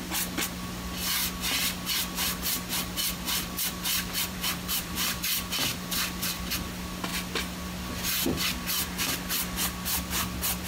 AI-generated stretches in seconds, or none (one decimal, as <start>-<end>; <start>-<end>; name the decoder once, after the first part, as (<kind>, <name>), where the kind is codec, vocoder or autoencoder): 3.0-5.2 (vocoder, BigVGAN v2); 5.7-6.4